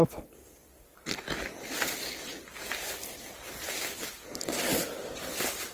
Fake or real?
fake